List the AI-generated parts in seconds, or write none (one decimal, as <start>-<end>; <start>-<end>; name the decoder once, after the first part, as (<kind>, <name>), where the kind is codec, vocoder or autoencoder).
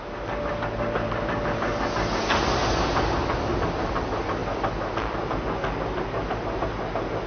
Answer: none